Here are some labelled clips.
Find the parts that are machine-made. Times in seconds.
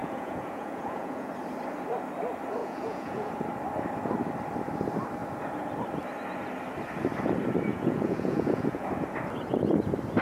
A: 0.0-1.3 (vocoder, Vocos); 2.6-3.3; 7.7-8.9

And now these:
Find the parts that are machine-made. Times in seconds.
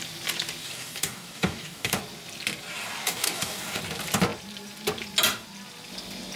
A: 0.6-2.0 (codec, DAC); 3.0-3.8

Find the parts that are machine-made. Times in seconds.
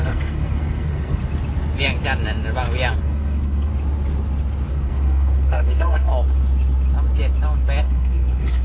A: 0.0-1.2 (codec, SNAC); 3.0-3.7; 4.7-6.1; 7.8-8.6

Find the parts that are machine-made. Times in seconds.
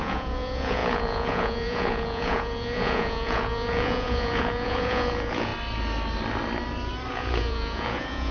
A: 0.0-5.5 (vocoder, Vocos); 7.1-8.3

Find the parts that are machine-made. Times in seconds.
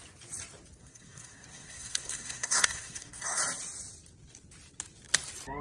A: 0.8-3.4 (codec, SNAC)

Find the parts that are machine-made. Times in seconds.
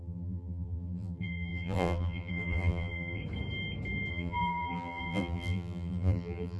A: 0.0-3.2 (vocoder, BigVGAN v2); 4.1-6.6